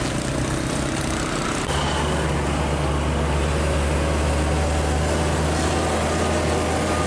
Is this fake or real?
real